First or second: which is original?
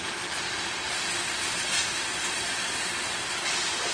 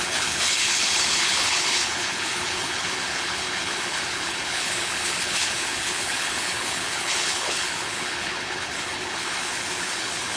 first